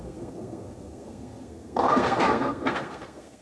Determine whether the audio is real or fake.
fake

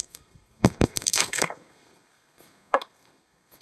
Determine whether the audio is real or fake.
fake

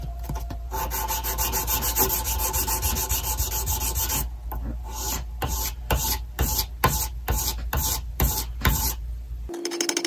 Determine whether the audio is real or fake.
real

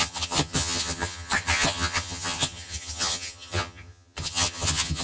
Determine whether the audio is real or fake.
fake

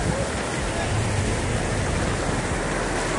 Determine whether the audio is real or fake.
real